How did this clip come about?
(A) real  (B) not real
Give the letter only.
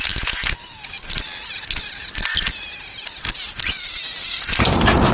A